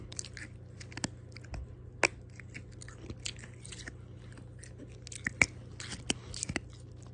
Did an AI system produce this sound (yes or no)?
no